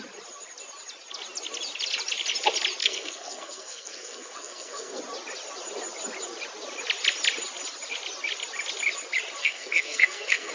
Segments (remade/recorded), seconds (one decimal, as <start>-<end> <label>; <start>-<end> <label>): 0.0-2.8 recorded; 2.8-5.0 remade; 5.0-9.4 recorded; 9.4-10.5 remade